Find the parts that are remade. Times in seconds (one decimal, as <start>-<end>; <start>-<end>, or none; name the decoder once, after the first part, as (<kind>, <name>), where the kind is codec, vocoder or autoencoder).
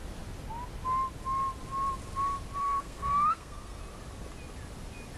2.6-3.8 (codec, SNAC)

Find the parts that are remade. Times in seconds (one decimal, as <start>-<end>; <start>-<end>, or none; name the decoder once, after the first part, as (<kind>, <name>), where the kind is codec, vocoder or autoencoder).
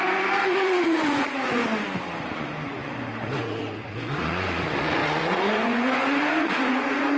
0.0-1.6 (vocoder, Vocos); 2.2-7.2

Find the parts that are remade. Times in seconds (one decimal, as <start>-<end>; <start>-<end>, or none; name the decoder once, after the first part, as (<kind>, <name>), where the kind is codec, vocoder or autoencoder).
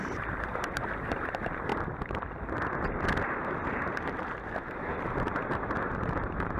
0.0-1.7 (vocoder, BigVGAN v2); 3.8-6.6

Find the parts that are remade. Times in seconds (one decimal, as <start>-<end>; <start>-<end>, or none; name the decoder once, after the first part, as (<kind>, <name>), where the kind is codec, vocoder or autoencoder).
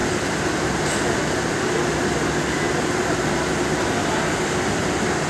none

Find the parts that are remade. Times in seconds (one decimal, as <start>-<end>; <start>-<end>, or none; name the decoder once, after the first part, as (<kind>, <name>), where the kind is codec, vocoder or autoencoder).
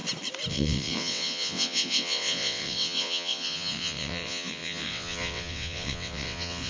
0.5-6.7 (vocoder, WaveNeXt)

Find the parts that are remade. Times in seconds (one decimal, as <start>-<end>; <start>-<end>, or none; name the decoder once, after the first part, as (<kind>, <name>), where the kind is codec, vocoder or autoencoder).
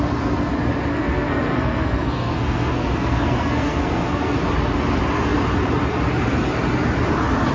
0.9-4.4 (codec, SNAC)